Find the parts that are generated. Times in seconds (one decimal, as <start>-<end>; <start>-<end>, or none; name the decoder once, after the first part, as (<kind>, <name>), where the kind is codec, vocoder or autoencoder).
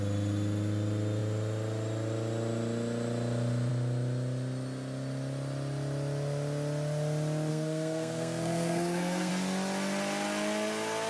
7.5-9.3 (codec, SNAC)